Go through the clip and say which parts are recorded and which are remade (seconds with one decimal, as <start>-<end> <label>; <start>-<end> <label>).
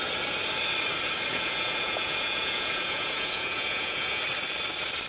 0.0-1.3 recorded; 1.3-4.2 remade; 4.2-5.1 recorded